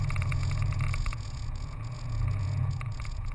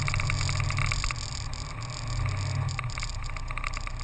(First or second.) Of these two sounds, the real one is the second